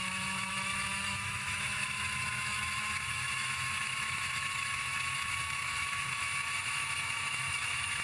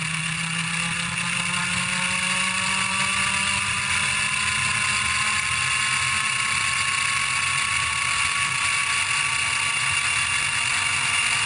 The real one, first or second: second